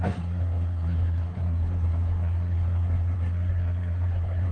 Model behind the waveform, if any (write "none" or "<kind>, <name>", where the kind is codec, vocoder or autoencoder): codec, SNAC